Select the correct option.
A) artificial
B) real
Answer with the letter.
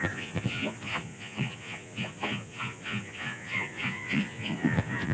A